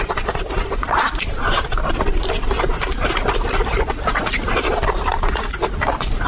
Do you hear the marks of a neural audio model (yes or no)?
no